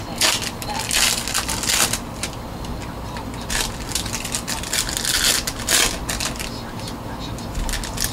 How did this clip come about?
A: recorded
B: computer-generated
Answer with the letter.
A